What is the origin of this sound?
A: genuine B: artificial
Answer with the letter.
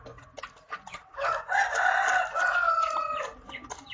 A